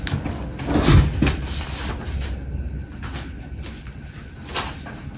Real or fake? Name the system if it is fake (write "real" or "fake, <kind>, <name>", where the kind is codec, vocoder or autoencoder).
real